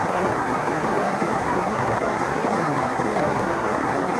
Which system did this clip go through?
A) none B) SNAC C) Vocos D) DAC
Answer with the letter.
B